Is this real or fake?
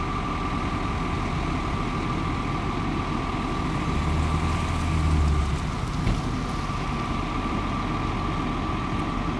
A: real